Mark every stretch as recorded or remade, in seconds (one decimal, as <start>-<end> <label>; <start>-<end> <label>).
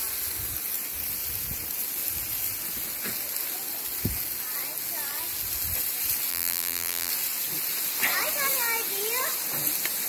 0.0-6.3 recorded; 6.3-7.1 remade; 7.1-10.1 recorded